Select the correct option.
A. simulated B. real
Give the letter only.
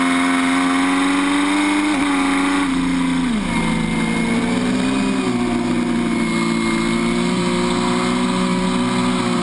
B